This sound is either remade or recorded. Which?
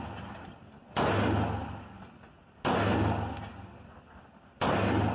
recorded